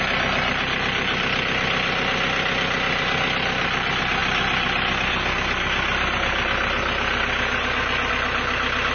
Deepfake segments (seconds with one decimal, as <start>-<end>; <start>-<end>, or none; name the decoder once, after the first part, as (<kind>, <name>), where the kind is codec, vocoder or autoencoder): none